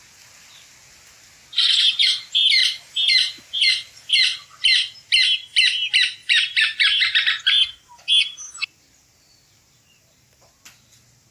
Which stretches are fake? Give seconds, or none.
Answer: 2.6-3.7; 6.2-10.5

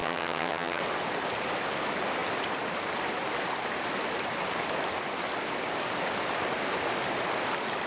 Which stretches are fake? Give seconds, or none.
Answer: 0.0-0.8

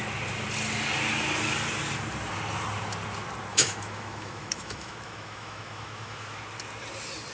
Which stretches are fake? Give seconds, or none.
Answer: 3.5-6.4

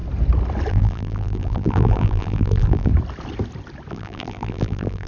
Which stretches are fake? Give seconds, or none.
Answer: 0.7-2.9; 3.9-5.1

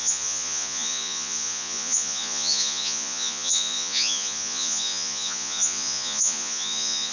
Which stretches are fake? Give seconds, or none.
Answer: 0.0-7.1

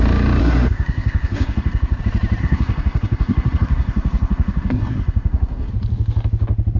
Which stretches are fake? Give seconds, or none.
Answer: 0.4-2.0; 2.4-5.7

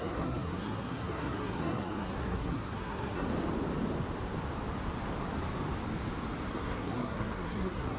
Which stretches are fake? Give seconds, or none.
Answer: 0.0-3.3; 6.5-8.0